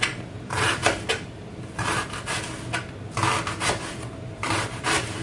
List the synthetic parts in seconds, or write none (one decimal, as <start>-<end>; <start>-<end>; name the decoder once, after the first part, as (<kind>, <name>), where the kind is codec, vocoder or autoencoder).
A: 0.0-0.8 (vocoder, BigVGAN v2); 3.9-5.2